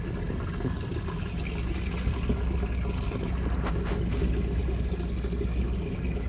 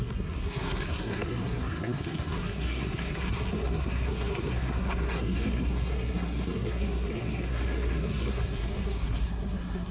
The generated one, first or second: second